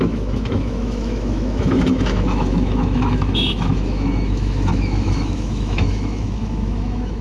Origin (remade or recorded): remade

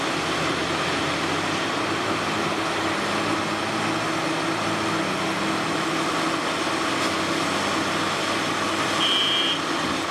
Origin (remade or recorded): recorded